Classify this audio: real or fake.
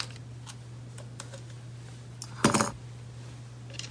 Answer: real